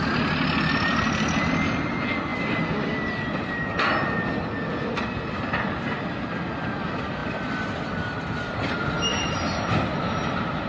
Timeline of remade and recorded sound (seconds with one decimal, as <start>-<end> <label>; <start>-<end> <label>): 0.0-10.7 recorded